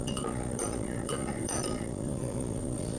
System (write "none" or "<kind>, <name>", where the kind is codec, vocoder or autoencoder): vocoder, Vocos